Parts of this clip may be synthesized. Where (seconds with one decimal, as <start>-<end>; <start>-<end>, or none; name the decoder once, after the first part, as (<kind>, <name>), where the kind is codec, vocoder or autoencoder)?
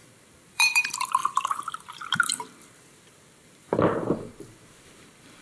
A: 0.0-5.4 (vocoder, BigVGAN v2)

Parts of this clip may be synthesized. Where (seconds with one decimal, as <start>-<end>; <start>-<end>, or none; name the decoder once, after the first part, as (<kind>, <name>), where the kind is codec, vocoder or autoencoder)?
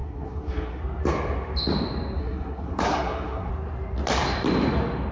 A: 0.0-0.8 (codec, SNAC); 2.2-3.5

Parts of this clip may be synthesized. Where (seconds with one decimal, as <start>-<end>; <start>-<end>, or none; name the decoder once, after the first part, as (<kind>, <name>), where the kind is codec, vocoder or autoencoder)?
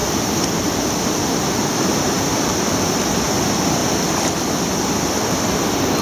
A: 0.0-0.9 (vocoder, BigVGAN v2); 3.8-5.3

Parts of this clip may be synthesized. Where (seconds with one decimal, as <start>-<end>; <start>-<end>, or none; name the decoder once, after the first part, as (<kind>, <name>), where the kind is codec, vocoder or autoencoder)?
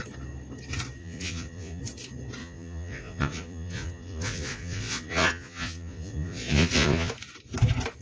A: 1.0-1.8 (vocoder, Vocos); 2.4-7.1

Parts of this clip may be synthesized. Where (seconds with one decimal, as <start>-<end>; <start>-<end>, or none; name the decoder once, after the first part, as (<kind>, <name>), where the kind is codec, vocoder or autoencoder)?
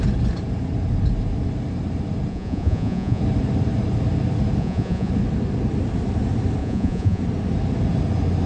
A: 2.3-3.2 (vocoder, Vocos); 4.6-5.1; 6.6-7.2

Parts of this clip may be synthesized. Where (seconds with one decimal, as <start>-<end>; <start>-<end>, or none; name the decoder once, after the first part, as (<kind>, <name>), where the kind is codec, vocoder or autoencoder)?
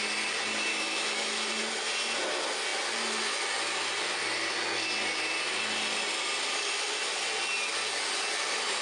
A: 0.7-1.5 (autoencoder, DAC-VAE)